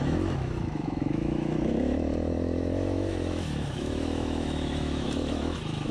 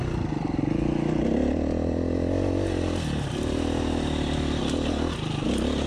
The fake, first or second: first